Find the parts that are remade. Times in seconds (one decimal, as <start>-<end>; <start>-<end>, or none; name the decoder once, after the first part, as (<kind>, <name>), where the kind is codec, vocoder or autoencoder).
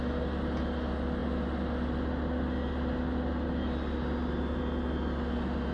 none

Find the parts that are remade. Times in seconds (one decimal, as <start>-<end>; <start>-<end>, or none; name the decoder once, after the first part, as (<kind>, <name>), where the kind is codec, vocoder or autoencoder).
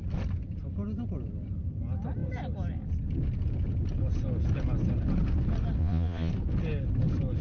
5.8-6.3 (vocoder, Vocos)